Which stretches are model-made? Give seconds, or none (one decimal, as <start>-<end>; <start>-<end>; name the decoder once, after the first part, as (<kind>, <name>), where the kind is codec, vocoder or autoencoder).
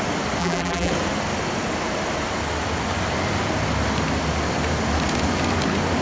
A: 0.4-0.9 (vocoder, BigVGAN v2)